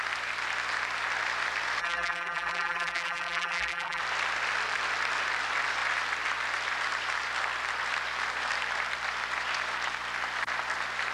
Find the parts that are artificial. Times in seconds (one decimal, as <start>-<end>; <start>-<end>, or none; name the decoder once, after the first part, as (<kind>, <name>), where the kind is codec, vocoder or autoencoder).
1.8-4.0 (vocoder, BigVGAN v2)